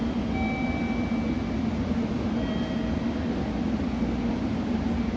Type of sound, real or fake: real